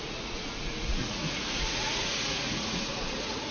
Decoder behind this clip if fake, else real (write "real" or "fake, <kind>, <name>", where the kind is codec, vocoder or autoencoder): fake, vocoder, Vocos